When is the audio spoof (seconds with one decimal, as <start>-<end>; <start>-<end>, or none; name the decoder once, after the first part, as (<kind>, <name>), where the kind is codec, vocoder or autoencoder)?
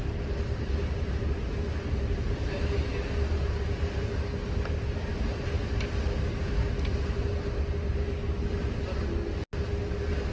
none